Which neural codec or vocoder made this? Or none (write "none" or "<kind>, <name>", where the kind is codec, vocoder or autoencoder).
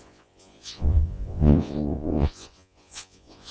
vocoder, Vocos